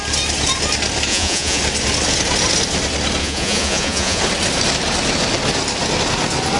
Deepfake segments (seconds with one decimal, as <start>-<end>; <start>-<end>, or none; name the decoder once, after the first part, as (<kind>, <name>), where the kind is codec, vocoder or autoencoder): 1.1-1.6 (vocoder, Vocos); 3.2-4.2